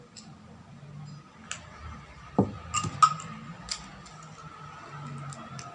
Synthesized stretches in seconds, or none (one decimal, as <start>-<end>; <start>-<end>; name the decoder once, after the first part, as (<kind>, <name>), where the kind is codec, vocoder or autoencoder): none